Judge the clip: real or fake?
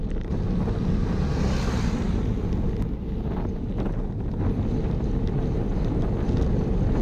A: real